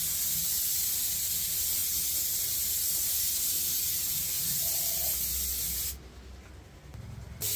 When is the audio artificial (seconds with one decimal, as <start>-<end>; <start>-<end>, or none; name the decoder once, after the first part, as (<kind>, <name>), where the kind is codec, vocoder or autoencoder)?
none